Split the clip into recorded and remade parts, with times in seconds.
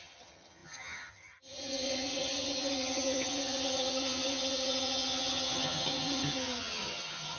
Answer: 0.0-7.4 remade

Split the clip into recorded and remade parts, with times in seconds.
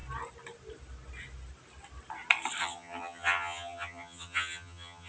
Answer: 0.0-2.6 recorded; 2.6-5.1 remade